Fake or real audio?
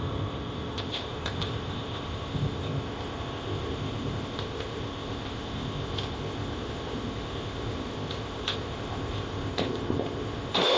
fake